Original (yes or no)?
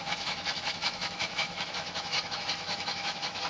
no